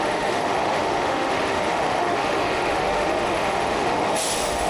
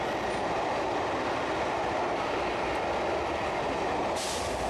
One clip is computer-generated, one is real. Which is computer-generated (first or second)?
first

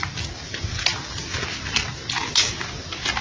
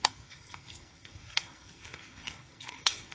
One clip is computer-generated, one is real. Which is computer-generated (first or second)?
second